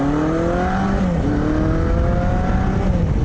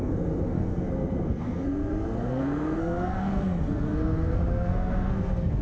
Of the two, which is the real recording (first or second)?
first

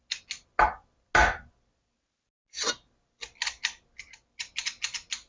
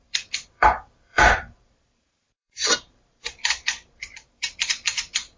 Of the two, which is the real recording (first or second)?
first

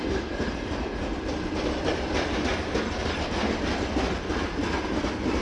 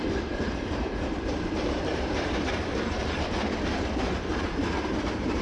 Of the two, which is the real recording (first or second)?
first